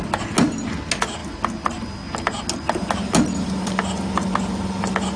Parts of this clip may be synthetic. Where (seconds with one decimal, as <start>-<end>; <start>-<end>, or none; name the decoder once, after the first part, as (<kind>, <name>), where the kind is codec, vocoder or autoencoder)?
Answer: none